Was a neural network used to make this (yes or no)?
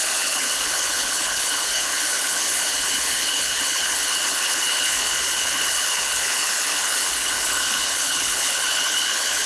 yes